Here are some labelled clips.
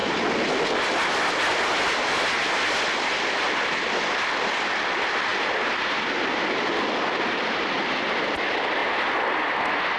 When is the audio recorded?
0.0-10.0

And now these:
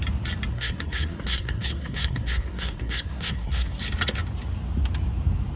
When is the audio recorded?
0.0-0.5; 3.8-5.6

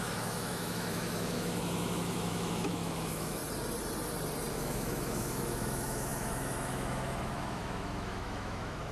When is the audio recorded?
3.4-4.5

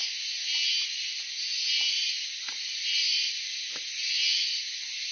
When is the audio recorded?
0.0-5.1

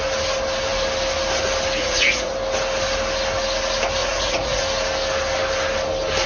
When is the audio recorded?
0.0-1.8; 2.3-4.0; 4.6-6.3

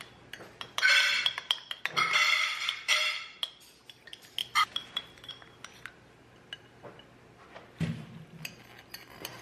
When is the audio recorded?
0.0-2.2; 3.0-4.4; 5.3-9.4

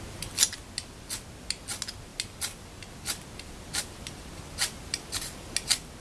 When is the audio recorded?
0.0-6.0